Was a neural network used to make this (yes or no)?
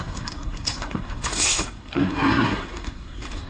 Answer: yes